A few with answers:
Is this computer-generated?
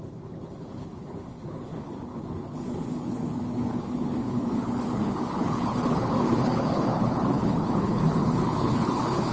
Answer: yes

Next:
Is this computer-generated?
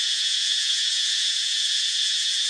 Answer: yes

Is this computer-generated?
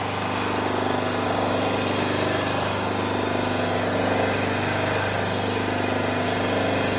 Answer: no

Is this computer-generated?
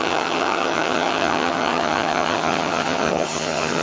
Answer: yes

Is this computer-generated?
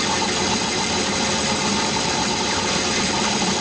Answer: no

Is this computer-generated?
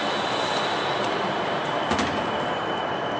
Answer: no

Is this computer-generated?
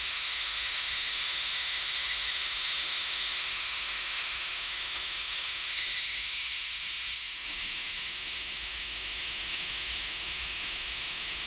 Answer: yes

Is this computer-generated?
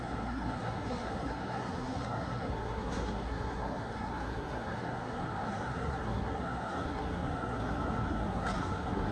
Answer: yes